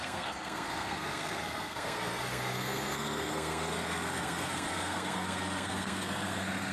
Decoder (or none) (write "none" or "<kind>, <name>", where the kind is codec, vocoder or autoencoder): codec, SNAC